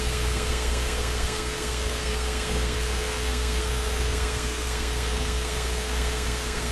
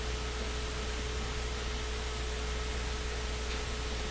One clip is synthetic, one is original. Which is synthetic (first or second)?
first